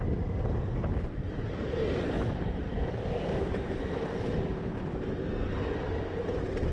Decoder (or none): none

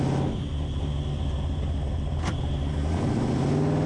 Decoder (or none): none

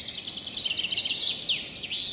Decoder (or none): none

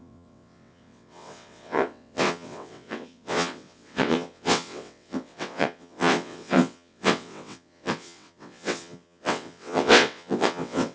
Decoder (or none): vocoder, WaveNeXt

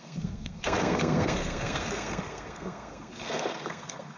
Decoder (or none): codec, SNAC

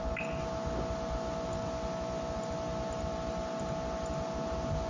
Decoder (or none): none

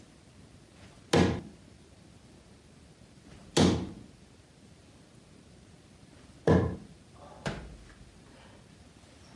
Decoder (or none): none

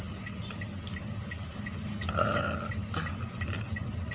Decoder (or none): none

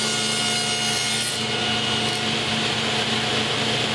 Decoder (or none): none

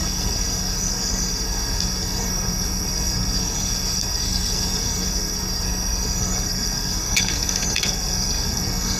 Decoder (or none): codec, SNAC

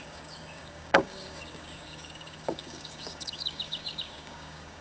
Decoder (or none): codec, DAC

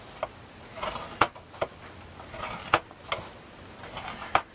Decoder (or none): none